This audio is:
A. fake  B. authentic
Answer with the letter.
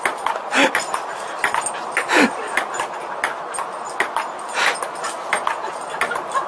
B